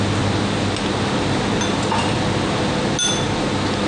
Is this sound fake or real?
real